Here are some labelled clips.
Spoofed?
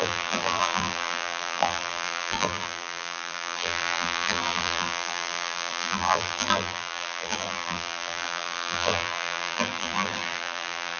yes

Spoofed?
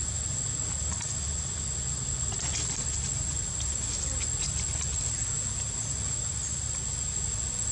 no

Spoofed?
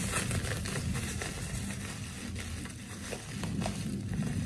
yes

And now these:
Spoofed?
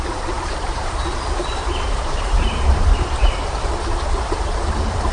yes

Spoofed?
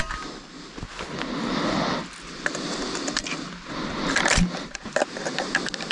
no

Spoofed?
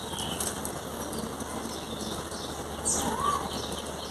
no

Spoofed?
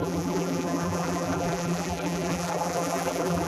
yes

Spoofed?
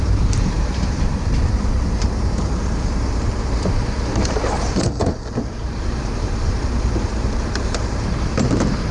yes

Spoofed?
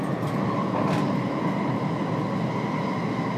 no